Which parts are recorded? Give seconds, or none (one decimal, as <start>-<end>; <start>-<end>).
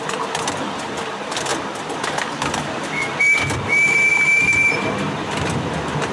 0.0-6.1